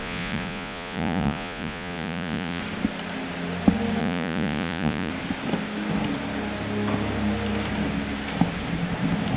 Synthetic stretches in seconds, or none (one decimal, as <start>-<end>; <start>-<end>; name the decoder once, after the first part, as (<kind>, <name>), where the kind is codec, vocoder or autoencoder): 0.0-2.6 (vocoder, Vocos); 4.0-5.1